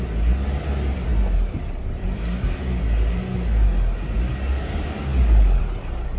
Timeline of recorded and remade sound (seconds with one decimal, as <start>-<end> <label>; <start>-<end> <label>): 0.0-6.2 recorded